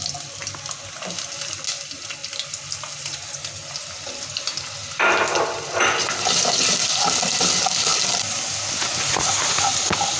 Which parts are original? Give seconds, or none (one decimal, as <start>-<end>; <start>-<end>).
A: 0.0-2.2; 3.3-4.8; 6.3-10.2